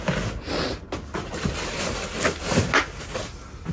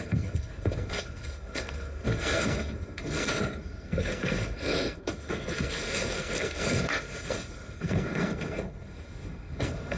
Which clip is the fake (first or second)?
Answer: second